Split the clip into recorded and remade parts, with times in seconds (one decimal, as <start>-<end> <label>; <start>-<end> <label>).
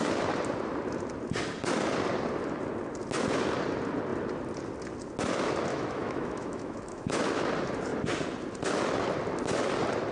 0.0-5.7 recorded; 5.7-7.2 remade; 7.2-10.1 recorded